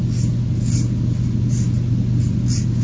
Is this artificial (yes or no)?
no